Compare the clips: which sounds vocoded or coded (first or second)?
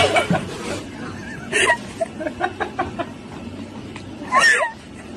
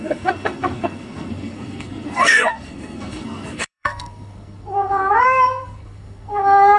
second